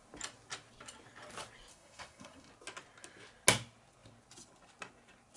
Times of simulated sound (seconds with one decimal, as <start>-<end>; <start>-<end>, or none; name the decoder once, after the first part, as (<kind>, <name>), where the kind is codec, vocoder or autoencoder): 1.7-2.5 (codec, SNAC)